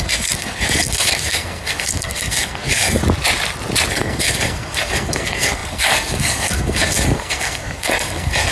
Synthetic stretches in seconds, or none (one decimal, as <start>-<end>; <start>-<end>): 0.0-3.0; 3.9-8.5